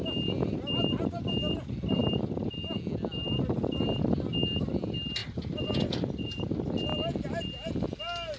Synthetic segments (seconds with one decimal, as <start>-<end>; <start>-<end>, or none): 5.2-6.4